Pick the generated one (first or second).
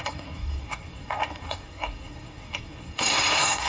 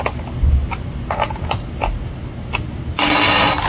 first